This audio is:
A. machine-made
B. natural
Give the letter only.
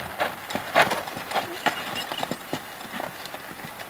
B